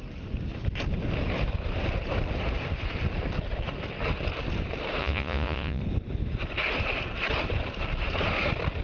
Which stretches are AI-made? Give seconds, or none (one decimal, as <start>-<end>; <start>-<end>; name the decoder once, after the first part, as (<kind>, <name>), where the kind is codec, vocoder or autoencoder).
5.0-5.8 (vocoder, Vocos)